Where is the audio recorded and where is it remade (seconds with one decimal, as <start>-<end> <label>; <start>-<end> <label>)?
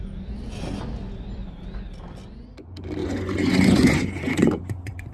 0.0-3.0 recorded; 3.0-5.1 remade